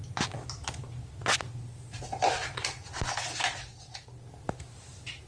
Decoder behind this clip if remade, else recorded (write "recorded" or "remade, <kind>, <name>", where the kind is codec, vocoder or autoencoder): recorded